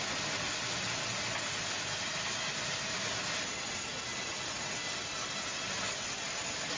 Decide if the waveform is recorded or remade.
recorded